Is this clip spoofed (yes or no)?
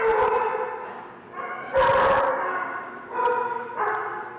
no